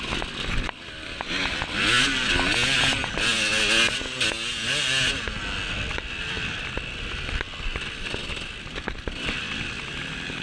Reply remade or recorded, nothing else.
recorded